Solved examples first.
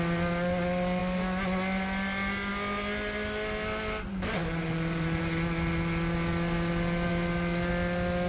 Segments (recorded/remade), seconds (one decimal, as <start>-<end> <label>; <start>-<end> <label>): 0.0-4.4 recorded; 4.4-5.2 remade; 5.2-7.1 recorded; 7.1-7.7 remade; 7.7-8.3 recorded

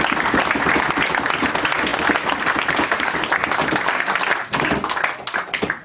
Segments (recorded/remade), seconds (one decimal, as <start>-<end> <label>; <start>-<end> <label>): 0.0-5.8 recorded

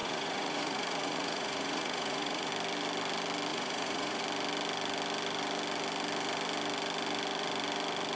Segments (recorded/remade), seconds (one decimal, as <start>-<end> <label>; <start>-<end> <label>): 0.0-2.5 remade; 2.5-3.5 recorded; 3.5-4.2 remade; 4.2-8.2 recorded